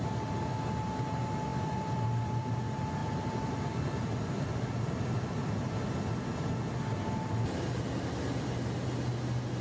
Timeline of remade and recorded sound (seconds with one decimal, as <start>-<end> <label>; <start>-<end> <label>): 0.0-1.5 recorded; 1.5-2.6 remade; 2.6-3.0 recorded; 3.0-5.7 remade; 5.7-9.6 recorded